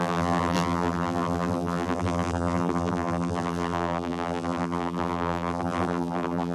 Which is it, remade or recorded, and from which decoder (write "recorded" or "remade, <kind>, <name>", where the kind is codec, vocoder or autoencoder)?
remade, vocoder, BigVGAN v2